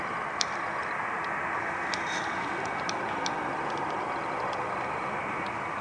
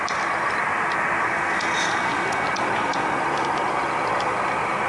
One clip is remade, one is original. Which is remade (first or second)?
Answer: first